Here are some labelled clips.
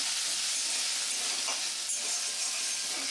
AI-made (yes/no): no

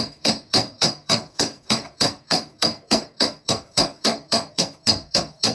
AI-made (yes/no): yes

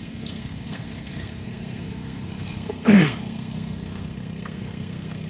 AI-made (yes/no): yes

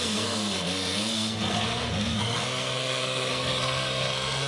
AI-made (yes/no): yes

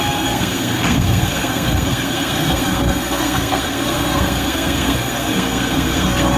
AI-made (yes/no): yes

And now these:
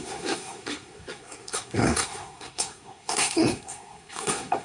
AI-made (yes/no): yes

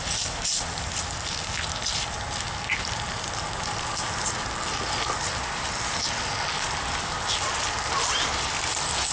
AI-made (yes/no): no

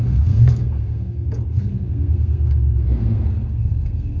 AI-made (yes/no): yes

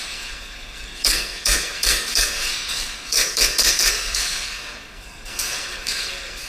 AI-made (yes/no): yes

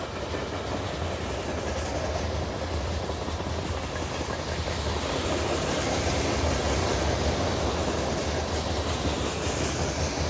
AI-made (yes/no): no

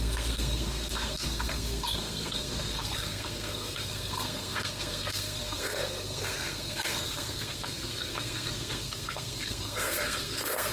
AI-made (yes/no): yes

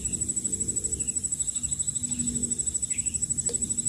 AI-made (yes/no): no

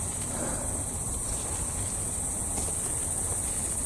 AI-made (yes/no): no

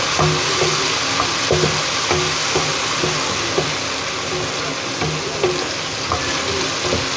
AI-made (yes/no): no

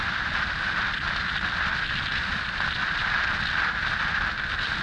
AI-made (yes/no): no